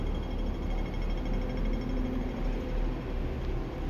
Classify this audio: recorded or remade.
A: recorded